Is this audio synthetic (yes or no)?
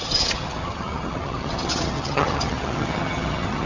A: yes